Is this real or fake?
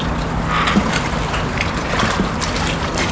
real